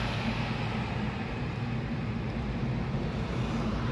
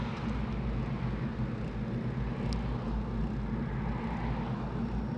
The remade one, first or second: first